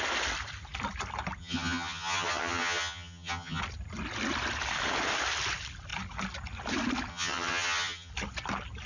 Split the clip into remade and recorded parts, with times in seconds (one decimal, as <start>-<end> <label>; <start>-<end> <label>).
0.0-1.4 recorded; 1.4-3.6 remade; 3.6-7.1 recorded; 7.1-8.1 remade; 8.1-8.9 recorded